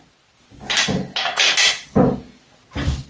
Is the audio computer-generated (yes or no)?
no